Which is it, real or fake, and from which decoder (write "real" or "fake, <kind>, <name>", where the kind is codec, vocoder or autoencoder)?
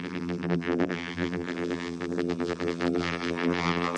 fake, vocoder, BigVGAN v2